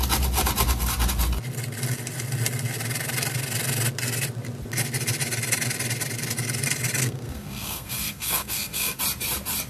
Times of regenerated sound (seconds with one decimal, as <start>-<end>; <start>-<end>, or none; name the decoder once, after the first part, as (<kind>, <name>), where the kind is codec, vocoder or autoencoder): 7.0-9.0 (codec, SNAC)